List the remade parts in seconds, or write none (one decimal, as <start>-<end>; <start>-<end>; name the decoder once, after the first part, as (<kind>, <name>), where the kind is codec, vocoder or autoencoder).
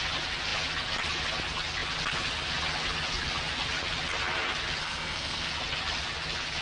4.8-5.5 (codec, SNAC)